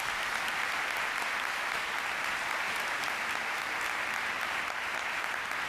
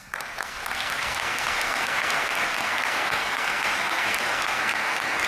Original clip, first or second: first